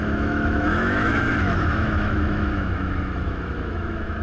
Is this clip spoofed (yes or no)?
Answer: yes